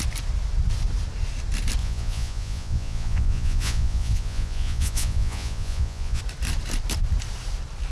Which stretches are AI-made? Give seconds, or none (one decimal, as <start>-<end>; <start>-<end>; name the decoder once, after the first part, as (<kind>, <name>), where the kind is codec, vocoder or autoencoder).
1.8-6.2 (vocoder, Vocos)